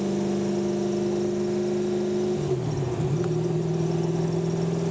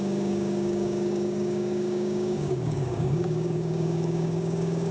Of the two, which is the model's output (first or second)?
second